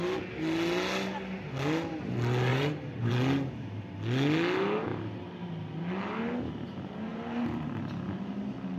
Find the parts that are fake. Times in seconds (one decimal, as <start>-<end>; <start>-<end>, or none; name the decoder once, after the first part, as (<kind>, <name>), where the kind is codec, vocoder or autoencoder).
2.5-3.1 (vocoder, BigVGAN v2); 4.9-5.5; 7.1-7.8